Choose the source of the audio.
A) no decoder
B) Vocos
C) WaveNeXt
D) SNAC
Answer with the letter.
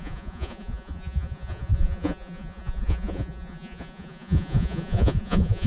B